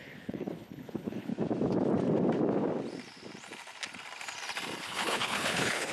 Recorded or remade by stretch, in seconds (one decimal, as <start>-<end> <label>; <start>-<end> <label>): 0.0-1.3 remade; 1.3-4.8 recorded; 4.8-5.9 remade